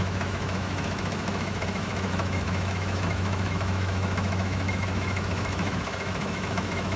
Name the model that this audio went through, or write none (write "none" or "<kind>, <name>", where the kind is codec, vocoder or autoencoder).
autoencoder, DAC-VAE